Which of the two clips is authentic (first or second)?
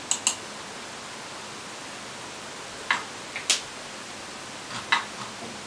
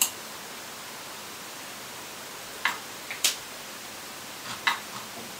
first